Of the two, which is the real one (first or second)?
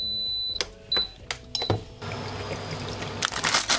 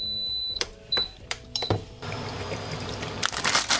first